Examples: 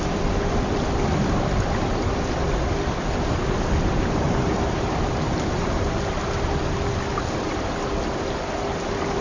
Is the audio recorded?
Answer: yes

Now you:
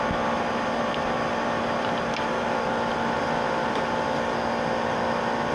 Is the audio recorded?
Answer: yes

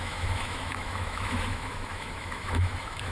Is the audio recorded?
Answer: no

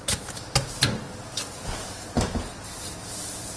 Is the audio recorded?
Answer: yes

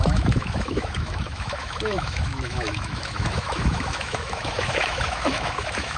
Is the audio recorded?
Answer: no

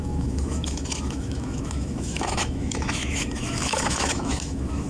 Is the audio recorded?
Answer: no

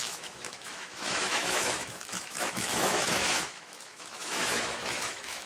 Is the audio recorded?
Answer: no